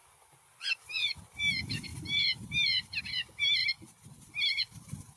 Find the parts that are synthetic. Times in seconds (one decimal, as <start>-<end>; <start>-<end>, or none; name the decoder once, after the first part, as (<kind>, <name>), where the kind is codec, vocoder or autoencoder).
0.0-1.4 (vocoder, BigVGAN v2); 1.9-3.0; 3.6-4.3